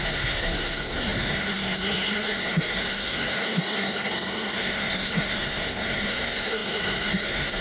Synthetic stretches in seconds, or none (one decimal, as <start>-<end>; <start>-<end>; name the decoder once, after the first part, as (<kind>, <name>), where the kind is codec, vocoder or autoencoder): 0.0-7.6 (codec, SNAC)

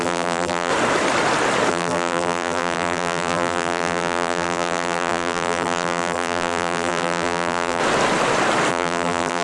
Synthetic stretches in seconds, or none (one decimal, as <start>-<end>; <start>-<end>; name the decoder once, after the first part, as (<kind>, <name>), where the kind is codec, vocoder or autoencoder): 0.0-0.7 (vocoder, BigVGAN v2); 1.7-7.8; 8.7-9.4

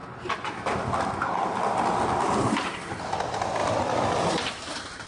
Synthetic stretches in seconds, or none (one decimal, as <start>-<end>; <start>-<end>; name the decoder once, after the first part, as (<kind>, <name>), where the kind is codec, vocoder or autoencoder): 2.2-5.1 (vocoder, BigVGAN v2)

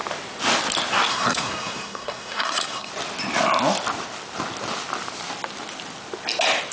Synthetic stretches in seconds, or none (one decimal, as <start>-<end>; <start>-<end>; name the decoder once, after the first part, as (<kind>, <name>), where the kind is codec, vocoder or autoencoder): 1.1-2.9 (codec, SNAC)

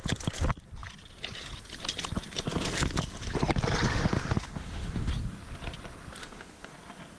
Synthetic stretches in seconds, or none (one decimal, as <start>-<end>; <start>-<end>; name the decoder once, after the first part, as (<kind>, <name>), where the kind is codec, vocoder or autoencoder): 3.9-5.1 (autoencoder, DAC-VAE); 6.2-6.7

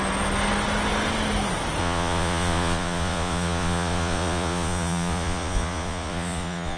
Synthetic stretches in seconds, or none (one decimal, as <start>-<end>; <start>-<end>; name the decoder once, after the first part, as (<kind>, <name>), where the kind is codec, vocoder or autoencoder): 1.8-6.8 (vocoder, Vocos)